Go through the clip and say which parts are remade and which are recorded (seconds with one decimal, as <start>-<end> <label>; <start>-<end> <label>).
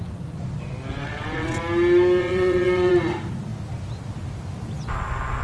0.0-0.9 recorded; 0.9-1.6 remade; 1.6-2.2 recorded; 2.2-2.9 remade; 2.9-5.4 recorded